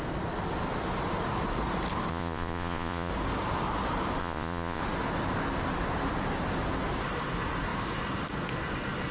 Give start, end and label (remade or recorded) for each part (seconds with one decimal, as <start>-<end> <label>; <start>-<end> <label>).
0.0-2.1 recorded; 2.1-3.1 remade; 3.1-4.2 recorded; 4.2-4.8 remade; 4.8-9.1 recorded